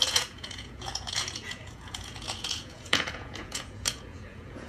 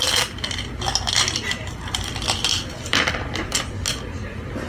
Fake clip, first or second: first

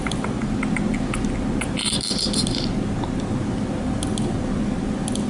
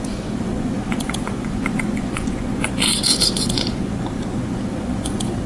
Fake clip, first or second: second